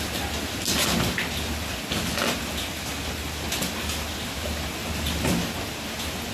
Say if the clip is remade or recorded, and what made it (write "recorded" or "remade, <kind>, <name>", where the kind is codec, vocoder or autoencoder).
recorded